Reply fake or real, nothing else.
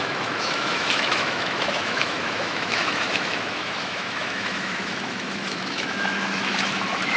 fake